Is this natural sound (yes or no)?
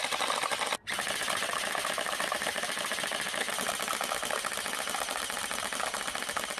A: no